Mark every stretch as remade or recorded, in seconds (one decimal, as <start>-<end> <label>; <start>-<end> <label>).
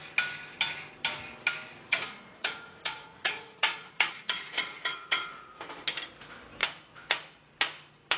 0.0-1.8 recorded; 1.8-5.7 remade; 5.7-8.2 recorded